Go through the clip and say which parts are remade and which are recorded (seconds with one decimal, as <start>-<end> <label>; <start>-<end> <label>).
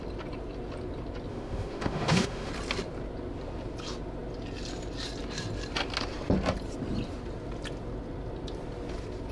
0.0-1.3 recorded; 1.3-2.5 remade; 2.5-9.3 recorded